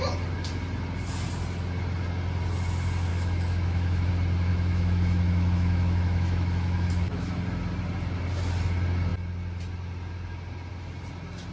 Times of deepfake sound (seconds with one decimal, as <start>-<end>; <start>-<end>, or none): 3.1-4.1; 4.5-7.4